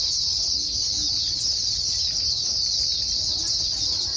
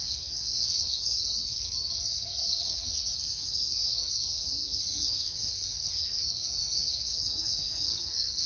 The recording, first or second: first